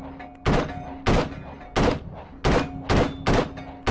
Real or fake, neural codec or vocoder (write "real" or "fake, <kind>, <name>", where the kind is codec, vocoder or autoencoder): real